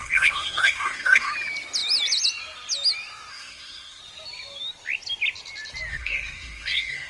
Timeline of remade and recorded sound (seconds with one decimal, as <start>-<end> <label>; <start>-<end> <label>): 0.0-1.3 remade; 1.3-3.3 recorded; 3.3-4.0 remade; 4.0-5.9 recorded; 5.9-7.1 remade